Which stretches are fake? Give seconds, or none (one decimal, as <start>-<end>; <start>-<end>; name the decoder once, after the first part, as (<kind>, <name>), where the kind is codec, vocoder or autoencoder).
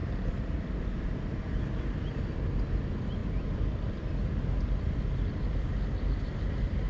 none